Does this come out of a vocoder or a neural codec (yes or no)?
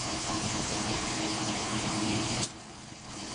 yes